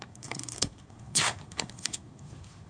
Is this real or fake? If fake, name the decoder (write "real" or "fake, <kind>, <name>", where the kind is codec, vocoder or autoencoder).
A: fake, codec, SNAC